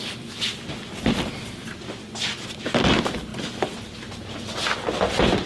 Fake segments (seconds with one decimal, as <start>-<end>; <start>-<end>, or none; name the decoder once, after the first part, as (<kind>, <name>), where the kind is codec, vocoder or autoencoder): none